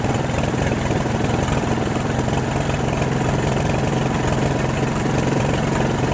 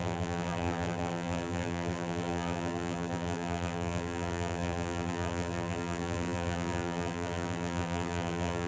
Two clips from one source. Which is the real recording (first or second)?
first